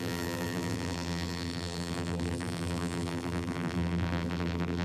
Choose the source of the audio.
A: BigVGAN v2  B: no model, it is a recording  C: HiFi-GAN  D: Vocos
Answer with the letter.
A